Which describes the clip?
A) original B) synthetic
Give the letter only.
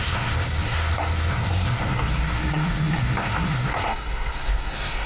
B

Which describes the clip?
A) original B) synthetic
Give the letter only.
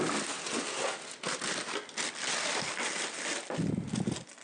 A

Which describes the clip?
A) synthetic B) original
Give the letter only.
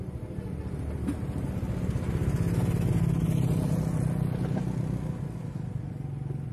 B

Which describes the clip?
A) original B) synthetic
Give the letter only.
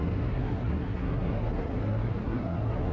B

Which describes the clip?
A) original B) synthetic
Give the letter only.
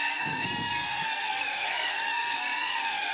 B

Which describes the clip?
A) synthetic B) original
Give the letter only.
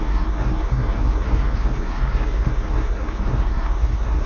A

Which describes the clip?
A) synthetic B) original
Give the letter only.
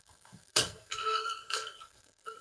A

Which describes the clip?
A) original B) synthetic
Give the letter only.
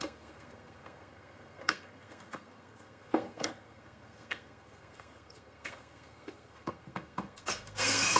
B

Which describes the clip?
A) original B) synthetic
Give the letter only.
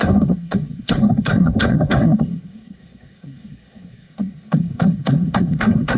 B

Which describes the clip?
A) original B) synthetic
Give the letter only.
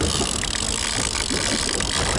A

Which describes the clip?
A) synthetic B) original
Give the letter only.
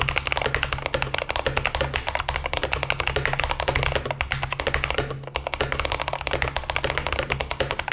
B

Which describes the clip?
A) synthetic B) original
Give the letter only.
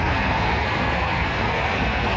A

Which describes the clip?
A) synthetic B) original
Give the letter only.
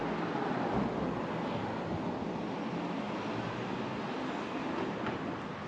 B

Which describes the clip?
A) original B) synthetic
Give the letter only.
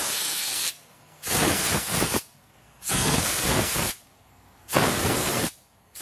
B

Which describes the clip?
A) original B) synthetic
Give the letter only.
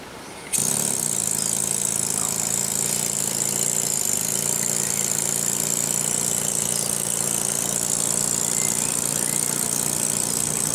A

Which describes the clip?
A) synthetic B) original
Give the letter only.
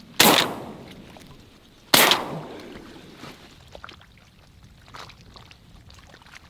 B